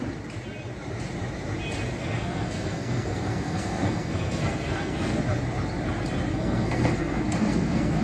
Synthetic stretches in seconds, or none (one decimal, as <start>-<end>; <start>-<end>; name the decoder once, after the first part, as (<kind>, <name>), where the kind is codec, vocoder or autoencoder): 2.0-5.2 (codec, SNAC); 6.3-8.0